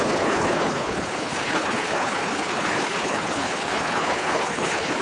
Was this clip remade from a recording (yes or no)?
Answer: yes